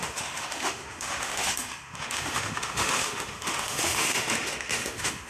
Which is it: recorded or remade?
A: remade